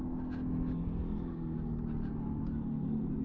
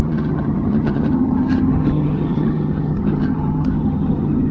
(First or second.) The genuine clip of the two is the first